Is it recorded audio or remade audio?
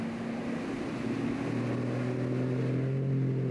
recorded